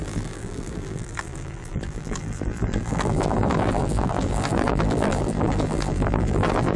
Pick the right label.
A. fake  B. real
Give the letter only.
A